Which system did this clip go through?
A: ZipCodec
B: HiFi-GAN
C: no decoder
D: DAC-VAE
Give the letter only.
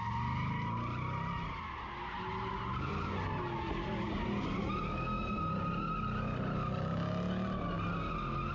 C